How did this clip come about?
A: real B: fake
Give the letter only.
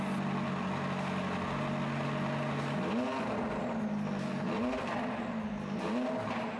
A